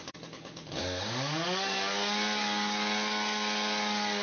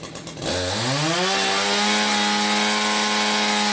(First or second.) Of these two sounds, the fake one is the first